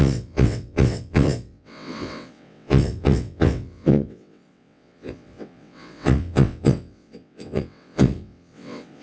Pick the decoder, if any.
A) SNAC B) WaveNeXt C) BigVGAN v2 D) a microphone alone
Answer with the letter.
B